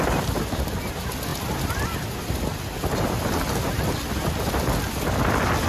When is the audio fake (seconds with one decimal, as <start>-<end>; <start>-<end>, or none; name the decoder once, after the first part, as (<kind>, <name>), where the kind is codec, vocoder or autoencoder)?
none